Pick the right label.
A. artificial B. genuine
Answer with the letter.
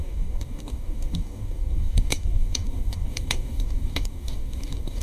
A